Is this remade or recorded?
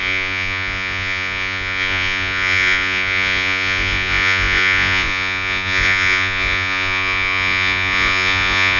remade